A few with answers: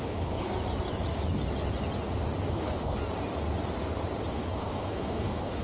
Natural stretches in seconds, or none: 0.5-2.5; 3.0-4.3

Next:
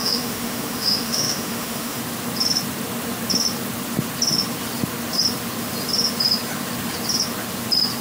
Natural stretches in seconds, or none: 2.0-8.0

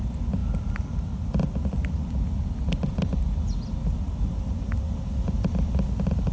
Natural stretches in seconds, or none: 0.0-6.3

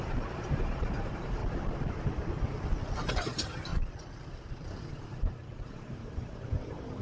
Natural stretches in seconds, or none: 1.4-3.1; 3.7-4.8